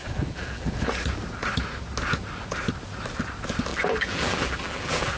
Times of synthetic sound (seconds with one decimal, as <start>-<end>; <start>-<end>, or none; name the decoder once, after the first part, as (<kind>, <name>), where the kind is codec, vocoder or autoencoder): 0.0-0.7 (vocoder, BigVGAN v2); 3.7-5.2

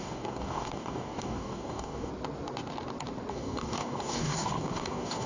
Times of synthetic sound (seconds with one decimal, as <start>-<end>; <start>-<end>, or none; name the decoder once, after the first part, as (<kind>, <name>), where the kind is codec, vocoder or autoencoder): 0.0-2.1 (codec, DAC); 3.3-5.3

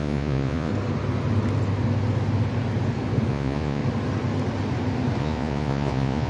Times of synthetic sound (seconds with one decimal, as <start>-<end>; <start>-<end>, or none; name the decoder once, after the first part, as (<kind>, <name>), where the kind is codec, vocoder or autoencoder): 0.0-0.7 (vocoder, Vocos); 3.3-3.8; 5.2-6.3

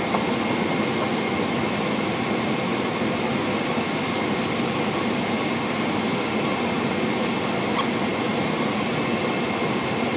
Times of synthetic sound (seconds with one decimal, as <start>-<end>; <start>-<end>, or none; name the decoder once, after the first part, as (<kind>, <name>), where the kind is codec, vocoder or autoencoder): none

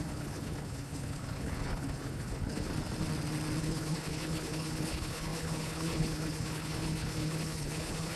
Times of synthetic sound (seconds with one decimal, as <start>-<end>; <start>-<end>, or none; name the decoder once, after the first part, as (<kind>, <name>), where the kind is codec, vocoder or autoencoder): 0.0-2.7 (codec, HILCodec); 3.6-8.2

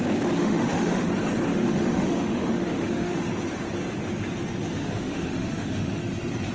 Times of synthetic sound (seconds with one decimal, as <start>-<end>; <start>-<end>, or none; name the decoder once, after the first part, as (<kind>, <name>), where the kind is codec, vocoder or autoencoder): 0.4-1.1 (autoencoder, DAC-VAE); 1.5-3.3; 4.8-6.0

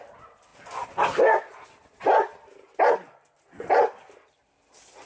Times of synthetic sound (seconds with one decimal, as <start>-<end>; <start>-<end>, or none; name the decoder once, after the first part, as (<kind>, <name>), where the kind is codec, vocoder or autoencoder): none

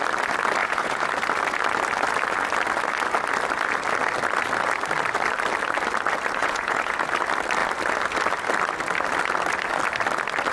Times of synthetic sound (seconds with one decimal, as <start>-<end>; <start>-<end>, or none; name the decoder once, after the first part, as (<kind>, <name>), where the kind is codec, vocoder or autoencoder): 0.6-1.1 (vocoder, Vocos); 6.4-6.9